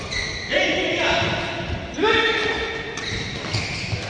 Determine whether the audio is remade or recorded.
recorded